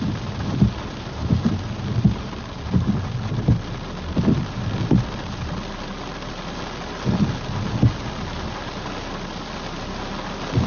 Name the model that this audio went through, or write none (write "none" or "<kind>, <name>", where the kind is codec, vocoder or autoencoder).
none